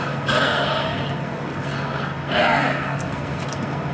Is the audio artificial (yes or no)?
yes